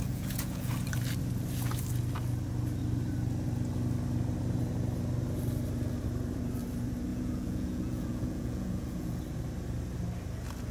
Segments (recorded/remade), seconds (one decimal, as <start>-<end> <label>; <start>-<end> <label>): 0.0-0.7 remade; 0.7-7.1 recorded; 7.1-9.2 remade; 9.2-10.7 recorded